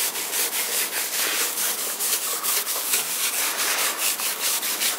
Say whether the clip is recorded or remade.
remade